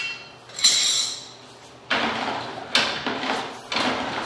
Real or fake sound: real